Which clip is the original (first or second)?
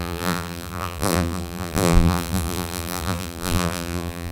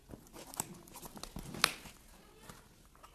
second